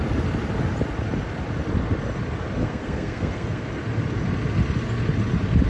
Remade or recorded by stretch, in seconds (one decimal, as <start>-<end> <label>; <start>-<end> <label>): 0.0-2.6 recorded; 2.6-3.7 remade; 3.7-5.7 recorded